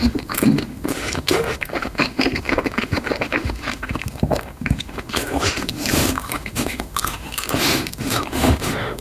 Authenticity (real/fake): fake